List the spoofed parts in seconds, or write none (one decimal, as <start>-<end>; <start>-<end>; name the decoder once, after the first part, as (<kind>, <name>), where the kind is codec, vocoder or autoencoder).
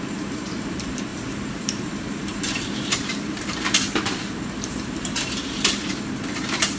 0.0-6.8 (vocoder, BigVGAN v2)